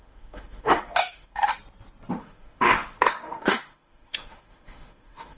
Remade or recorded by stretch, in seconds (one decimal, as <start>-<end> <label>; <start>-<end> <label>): 0.0-1.5 remade; 1.5-2.1 recorded; 2.1-5.4 remade